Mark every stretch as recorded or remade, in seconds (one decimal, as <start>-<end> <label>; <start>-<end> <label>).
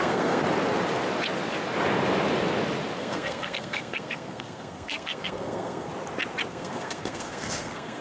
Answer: 0.0-0.4 remade; 0.4-3.0 recorded; 3.0-5.9 remade; 5.9-6.5 recorded; 6.5-8.0 remade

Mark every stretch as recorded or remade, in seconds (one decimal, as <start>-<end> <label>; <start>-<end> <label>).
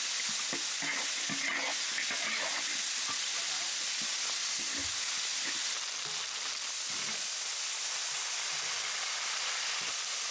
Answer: 0.0-10.3 recorded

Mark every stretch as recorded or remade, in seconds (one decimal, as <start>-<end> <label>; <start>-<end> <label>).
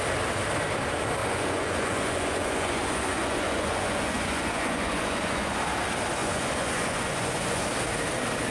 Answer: 0.0-1.2 recorded; 1.2-5.6 remade; 5.6-6.2 recorded; 6.2-7.6 remade; 7.6-8.5 recorded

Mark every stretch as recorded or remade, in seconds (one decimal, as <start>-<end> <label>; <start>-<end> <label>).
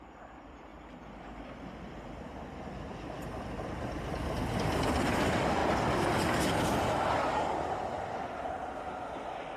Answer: 0.0-9.6 recorded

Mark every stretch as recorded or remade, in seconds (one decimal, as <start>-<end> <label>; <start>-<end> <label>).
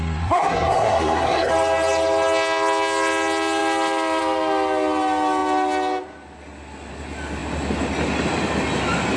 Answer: 0.0-1.5 remade; 1.5-9.2 recorded